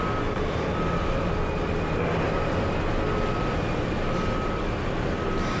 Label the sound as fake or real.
real